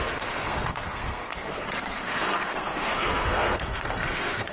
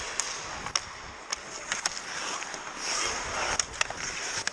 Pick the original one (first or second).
second